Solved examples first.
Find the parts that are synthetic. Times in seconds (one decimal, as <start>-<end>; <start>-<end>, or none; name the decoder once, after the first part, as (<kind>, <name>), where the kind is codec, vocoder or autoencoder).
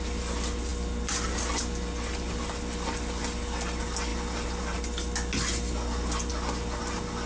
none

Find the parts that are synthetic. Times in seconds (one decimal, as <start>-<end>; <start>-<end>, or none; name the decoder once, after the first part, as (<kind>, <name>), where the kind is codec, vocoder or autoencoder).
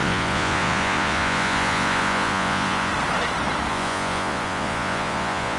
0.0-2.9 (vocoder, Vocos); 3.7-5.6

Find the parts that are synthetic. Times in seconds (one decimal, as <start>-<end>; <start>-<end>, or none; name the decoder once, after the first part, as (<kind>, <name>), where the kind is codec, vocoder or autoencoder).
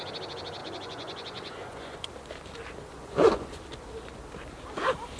0.6-2.1 (vocoder, Vocos); 2.9-3.6